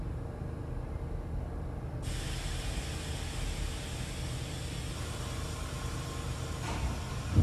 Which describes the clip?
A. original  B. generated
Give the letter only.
A